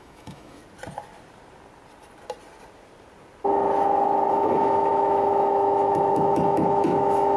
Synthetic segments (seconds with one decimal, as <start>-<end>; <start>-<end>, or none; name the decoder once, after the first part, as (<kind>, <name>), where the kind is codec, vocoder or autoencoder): 0.0-0.6 (autoencoder, DAC-VAE); 4.3-7.4

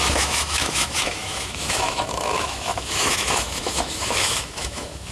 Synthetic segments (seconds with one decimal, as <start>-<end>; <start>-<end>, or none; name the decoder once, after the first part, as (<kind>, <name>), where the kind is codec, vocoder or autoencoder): 0.0-5.1 (autoencoder, DAC-VAE)

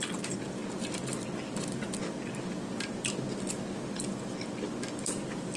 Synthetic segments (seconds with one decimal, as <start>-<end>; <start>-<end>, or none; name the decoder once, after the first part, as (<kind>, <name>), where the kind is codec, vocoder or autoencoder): none